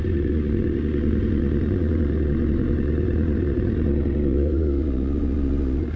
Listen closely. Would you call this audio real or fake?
fake